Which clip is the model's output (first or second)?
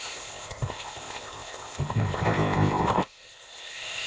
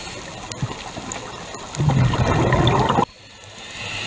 first